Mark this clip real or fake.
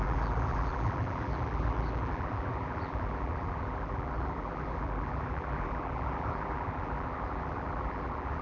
fake